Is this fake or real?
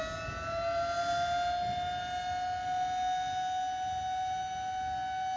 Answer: real